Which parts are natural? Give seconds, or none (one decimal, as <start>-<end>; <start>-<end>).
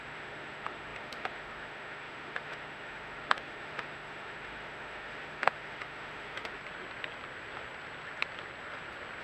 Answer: 6.6-9.2